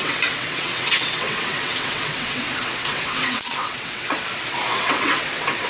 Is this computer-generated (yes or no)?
yes